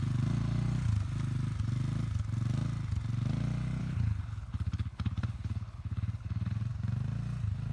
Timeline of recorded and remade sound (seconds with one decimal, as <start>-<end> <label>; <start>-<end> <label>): 0.0-3.8 recorded; 3.8-6.6 remade; 6.6-7.7 recorded